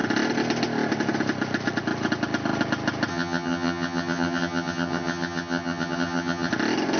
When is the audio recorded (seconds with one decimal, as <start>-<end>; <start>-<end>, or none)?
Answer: 0.0-3.1; 6.5-7.0

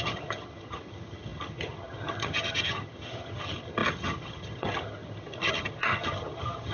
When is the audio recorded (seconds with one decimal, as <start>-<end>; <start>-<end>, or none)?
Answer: none

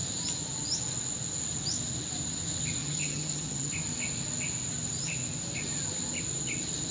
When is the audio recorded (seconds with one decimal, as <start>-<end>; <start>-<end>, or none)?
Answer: 0.0-2.8; 3.7-6.9

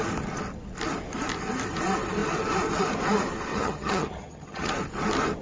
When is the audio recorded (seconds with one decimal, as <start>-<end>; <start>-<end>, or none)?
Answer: 0.0-3.5; 4.7-5.4